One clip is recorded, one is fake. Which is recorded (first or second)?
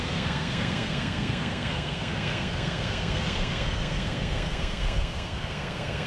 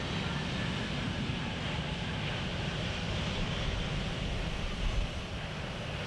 second